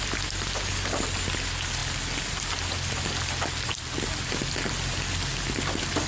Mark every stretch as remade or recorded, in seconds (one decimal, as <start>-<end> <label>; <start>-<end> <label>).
0.0-6.1 recorded